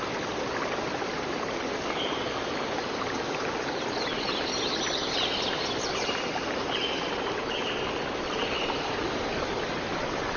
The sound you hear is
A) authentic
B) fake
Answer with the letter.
A